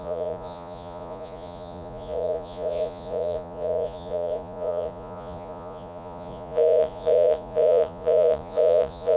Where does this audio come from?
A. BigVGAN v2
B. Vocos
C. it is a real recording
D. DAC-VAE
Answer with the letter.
B